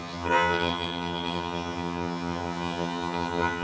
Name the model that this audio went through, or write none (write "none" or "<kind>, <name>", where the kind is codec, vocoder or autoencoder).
vocoder, HiFi-GAN